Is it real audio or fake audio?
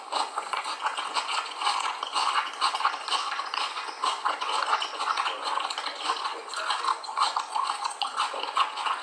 fake